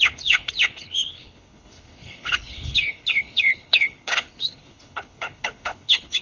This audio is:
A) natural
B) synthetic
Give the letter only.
B